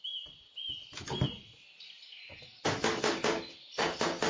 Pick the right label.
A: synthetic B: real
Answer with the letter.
B